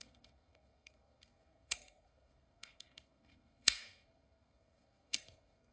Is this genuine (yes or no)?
no